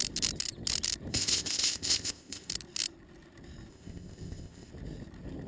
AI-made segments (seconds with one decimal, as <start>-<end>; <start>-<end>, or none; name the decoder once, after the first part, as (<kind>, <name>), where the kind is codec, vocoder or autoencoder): 1.1-2.5 (codec, ZipCodec); 3.7-4.7